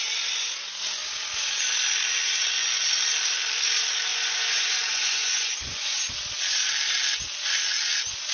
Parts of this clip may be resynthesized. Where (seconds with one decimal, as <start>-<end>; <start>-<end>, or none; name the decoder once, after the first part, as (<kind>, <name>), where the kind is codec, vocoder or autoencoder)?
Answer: 4.1-6.1 (vocoder, Vocos)